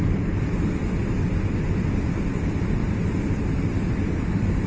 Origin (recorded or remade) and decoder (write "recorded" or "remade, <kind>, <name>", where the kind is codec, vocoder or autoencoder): recorded